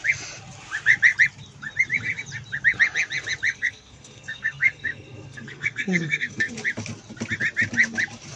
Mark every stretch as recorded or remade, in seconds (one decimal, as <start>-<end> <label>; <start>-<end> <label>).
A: 0.0-3.5 recorded; 3.5-6.5 remade; 6.5-8.4 recorded